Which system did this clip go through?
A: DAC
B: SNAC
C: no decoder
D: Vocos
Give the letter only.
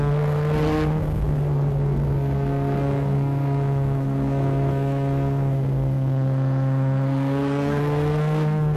B